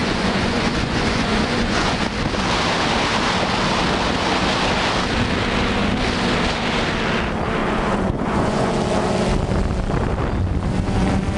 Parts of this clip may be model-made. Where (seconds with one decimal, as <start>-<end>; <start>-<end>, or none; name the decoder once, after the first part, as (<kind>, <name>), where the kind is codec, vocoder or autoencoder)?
0.0-2.0 (vocoder, Vocos); 7.6-8.7